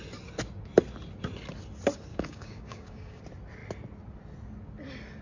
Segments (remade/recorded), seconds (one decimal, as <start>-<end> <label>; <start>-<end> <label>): 0.0-2.1 recorded; 2.1-3.2 remade; 3.2-5.2 recorded